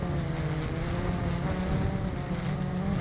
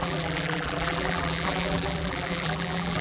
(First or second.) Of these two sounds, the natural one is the first